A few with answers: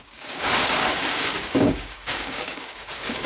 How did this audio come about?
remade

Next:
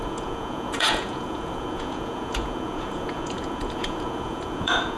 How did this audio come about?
remade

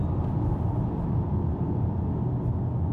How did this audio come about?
recorded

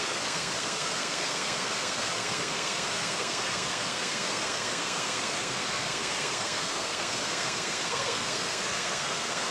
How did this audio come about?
remade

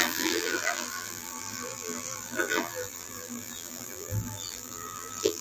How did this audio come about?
remade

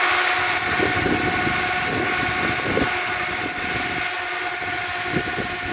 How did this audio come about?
recorded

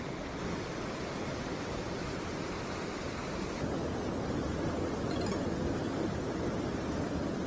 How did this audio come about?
recorded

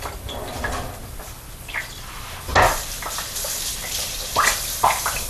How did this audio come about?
recorded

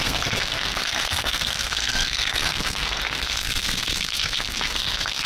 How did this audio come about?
remade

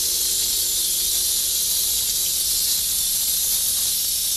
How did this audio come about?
recorded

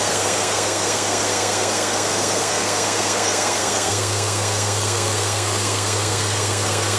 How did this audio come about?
remade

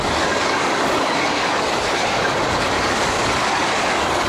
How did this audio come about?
remade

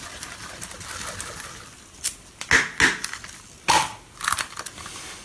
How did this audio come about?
recorded